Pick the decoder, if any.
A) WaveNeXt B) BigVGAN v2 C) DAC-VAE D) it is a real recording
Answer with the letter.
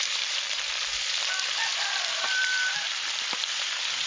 B